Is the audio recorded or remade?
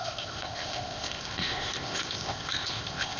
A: remade